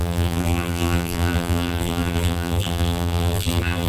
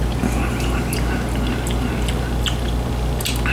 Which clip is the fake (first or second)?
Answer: first